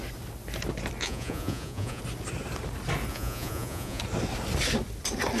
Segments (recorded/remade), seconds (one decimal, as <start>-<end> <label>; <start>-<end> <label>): 0.0-1.0 recorded; 1.0-2.0 remade; 2.0-3.1 recorded; 3.1-4.0 remade; 4.0-5.4 recorded